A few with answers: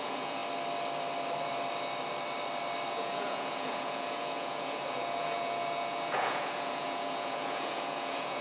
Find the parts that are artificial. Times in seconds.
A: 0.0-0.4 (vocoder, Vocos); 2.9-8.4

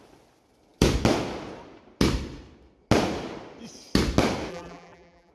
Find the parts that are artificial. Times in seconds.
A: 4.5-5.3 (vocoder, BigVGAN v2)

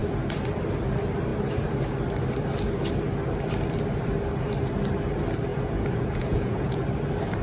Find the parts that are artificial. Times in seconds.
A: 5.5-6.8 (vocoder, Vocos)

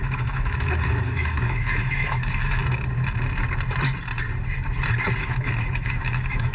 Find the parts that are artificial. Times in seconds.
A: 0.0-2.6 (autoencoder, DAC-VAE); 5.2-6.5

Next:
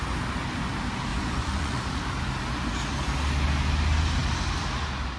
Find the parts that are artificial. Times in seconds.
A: 1.1-1.8 (vocoder, Vocos)

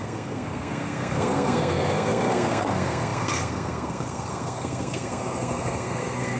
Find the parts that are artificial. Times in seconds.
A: 0.0-6.4 (codec, SNAC)

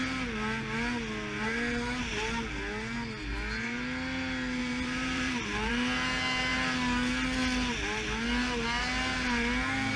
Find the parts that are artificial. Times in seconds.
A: 4.6-5.7 (vocoder, BigVGAN v2)